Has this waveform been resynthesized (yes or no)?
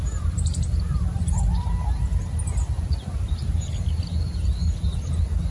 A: no